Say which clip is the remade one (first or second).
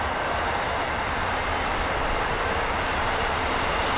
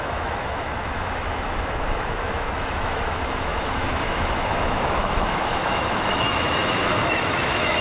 second